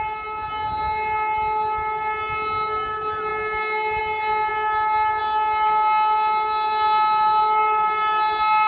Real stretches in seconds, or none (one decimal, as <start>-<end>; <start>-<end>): 0.0-8.7